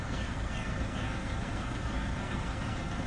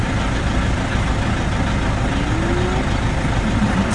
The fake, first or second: first